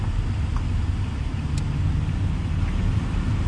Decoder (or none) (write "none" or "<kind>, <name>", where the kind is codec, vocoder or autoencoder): none